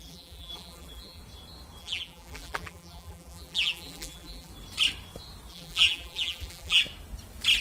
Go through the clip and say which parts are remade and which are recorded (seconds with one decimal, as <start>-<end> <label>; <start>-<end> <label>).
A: 0.0-1.2 remade; 1.2-1.8 recorded; 1.8-4.5 remade; 4.5-5.5 recorded; 5.5-6.8 remade; 6.8-7.6 recorded